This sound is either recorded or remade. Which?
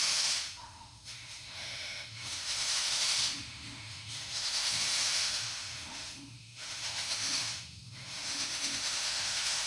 remade